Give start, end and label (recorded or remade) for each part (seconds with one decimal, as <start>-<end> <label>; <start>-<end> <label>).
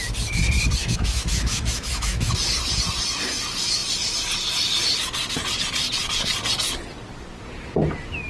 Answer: 0.0-0.8 recorded; 0.8-2.3 remade; 2.3-8.3 recorded